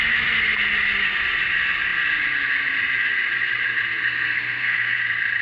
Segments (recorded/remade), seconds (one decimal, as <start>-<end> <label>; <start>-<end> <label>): 0.0-4.0 recorded; 4.0-5.0 remade; 5.0-5.4 recorded